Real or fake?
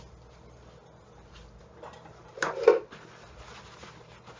real